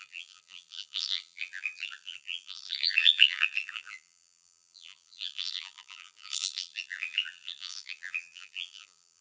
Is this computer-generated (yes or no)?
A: yes